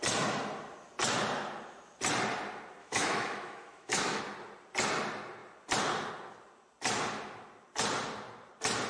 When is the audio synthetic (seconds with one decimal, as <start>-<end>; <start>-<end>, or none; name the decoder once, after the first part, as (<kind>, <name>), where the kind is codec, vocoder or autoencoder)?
2.8-4.2 (autoencoder, DAC-VAE)